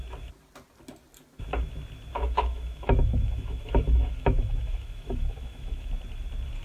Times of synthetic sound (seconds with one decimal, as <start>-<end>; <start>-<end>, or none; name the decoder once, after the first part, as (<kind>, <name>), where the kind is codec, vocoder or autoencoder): 2.1-5.9 (autoencoder, DAC-VAE)